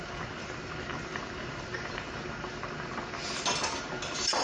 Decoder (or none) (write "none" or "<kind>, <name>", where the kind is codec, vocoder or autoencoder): none